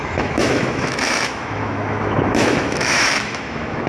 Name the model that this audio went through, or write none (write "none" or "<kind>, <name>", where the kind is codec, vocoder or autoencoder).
autoencoder, DAC-VAE